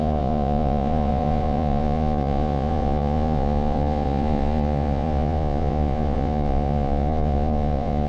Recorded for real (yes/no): no